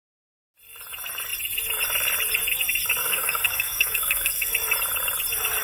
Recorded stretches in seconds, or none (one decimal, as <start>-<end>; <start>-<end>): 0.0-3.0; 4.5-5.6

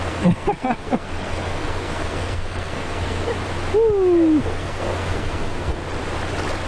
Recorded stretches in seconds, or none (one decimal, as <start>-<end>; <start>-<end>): 3.3-4.4; 5.8-6.7

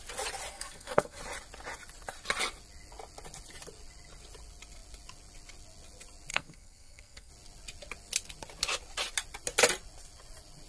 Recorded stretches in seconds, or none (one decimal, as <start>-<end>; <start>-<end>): 0.0-0.5; 1.2-6.3; 7.3-10.7

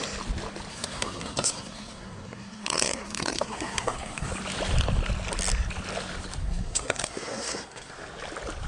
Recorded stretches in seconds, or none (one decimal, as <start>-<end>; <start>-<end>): 0.0-0.7; 4.3-6.4; 7.9-8.7

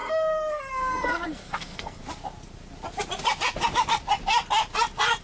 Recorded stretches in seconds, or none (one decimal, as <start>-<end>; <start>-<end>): 2.0-5.2